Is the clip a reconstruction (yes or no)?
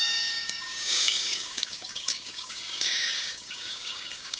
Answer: yes